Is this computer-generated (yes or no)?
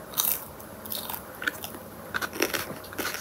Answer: no